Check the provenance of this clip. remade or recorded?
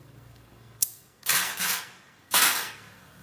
remade